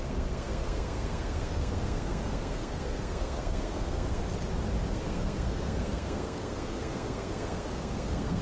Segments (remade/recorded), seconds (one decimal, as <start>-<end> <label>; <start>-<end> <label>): 0.0-4.2 remade; 4.2-4.9 recorded; 4.9-8.4 remade